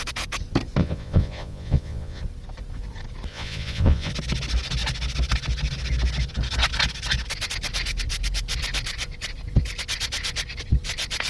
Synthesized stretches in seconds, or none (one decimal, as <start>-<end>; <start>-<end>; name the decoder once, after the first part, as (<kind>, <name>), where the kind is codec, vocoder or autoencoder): 0.8-2.2 (vocoder, Vocos); 3.3-4.1